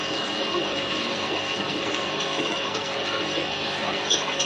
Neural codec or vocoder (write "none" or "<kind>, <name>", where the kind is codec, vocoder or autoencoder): codec, SNAC